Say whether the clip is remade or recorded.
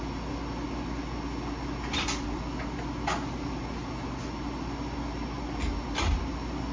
recorded